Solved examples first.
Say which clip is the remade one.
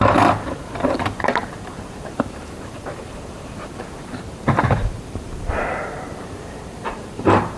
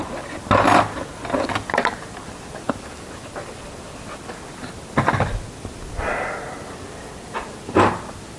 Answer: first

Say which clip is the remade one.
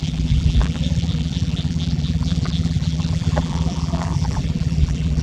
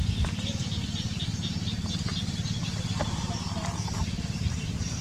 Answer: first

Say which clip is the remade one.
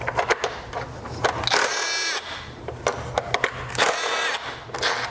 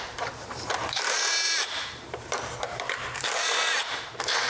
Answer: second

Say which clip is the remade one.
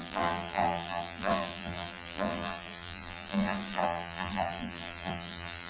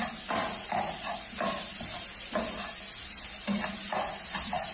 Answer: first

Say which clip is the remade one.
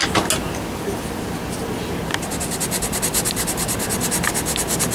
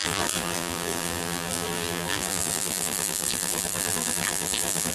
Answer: second